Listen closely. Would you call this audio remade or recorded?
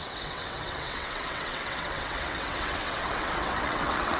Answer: remade